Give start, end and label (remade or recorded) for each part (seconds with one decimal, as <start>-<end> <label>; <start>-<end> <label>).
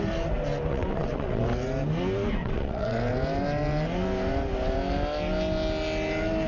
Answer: 0.0-0.7 recorded; 0.7-1.4 remade; 1.4-2.4 recorded; 2.4-3.0 remade; 3.0-6.5 recorded